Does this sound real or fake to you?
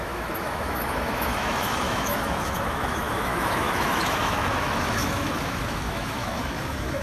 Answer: fake